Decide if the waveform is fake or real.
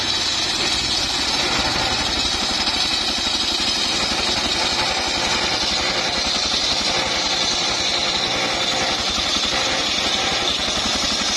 real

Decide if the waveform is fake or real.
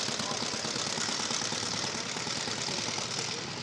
real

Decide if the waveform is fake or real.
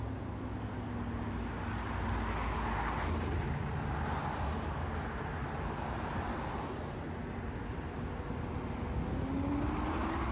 real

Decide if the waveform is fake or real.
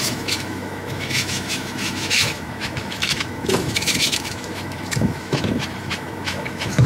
fake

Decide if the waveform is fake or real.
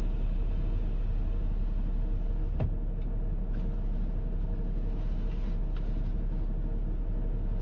real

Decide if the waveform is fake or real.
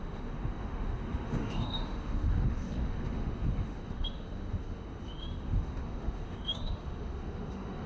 fake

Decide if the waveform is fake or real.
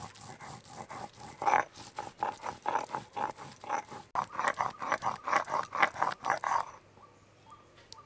real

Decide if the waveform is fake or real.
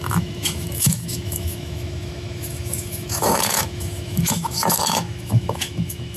fake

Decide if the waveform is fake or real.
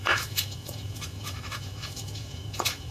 fake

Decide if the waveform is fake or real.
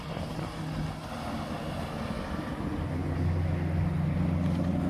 real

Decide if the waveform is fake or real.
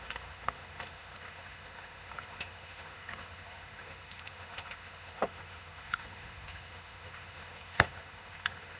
fake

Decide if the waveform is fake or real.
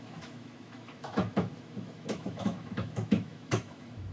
fake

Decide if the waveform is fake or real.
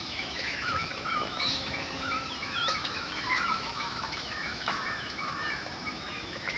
fake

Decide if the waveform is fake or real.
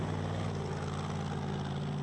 real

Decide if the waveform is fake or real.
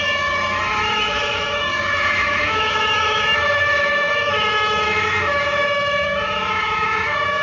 fake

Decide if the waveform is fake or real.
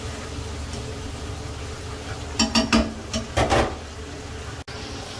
real